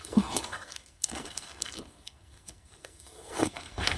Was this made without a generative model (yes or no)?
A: no